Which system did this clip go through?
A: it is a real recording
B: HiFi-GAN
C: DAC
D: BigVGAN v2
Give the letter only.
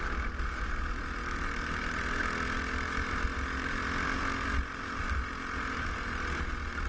A